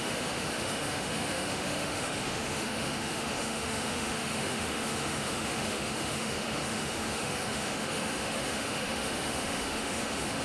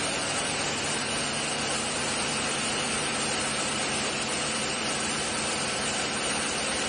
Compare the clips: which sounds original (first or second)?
second